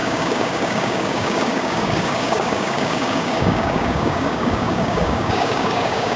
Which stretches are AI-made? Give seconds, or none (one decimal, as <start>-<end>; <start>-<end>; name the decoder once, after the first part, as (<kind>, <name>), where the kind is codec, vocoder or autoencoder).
0.0-6.2 (codec, DAC)